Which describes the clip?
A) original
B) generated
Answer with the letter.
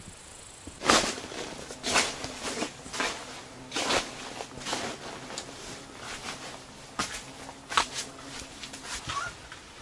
A